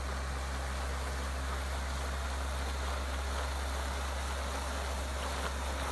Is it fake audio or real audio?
real